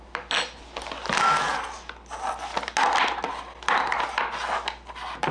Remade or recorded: recorded